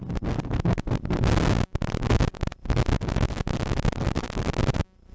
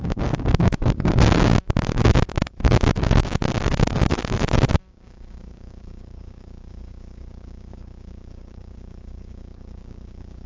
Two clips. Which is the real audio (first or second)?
first